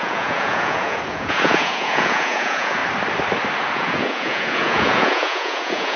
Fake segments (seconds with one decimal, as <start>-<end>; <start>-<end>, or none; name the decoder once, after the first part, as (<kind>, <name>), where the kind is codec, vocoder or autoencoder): 0.0-2.8 (vocoder, Vocos); 3.7-6.0